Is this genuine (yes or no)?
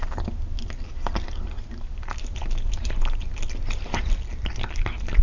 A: yes